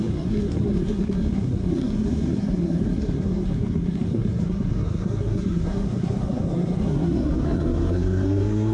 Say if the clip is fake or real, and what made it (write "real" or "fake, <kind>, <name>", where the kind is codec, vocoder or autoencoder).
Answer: fake, codec, SNAC